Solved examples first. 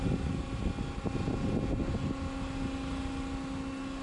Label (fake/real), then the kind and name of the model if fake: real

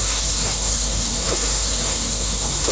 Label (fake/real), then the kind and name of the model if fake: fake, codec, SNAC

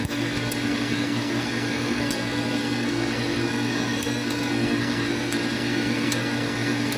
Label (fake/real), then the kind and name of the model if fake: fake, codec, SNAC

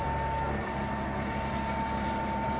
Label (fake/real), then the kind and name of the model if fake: real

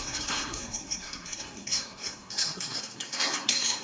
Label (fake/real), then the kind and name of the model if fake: fake, codec, SNAC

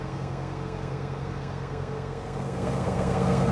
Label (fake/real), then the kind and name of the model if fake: fake, codec, SNAC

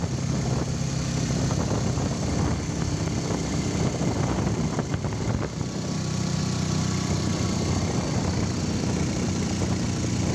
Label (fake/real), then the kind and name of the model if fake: real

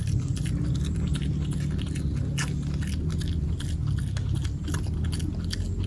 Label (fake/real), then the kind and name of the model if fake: real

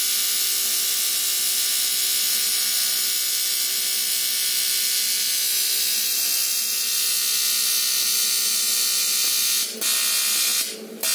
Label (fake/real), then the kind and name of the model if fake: real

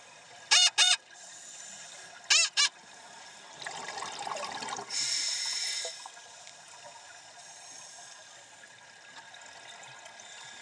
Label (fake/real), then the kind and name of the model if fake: real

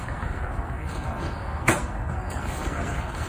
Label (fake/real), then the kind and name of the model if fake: fake, codec, SNAC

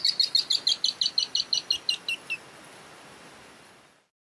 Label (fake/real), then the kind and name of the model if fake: real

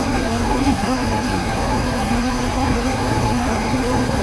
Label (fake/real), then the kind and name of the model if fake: fake, codec, SNAC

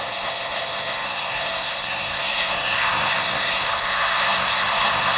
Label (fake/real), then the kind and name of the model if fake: fake, codec, SNAC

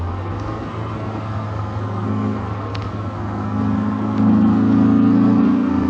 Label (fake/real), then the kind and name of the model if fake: fake, codec, SNAC